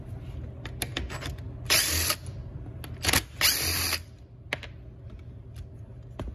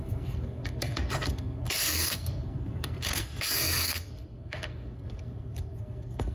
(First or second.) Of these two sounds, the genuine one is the first